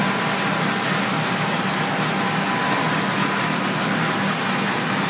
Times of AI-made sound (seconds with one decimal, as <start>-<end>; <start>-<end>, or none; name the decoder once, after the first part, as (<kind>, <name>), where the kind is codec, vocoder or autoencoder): none

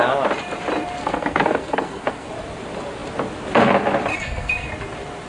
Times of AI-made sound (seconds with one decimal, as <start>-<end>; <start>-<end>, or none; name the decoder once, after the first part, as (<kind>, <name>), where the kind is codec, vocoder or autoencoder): 1.0-2.3 (codec, SNAC); 4.1-4.7

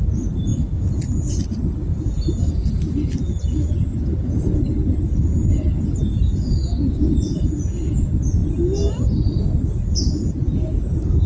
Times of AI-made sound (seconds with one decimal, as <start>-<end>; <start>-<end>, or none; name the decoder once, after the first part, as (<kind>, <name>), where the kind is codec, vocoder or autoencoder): none

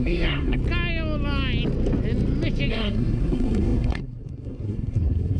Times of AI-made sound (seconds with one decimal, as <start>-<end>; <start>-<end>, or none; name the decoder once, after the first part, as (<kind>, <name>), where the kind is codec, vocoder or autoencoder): 0.0-0.6 (codec, SNAC); 2.7-5.4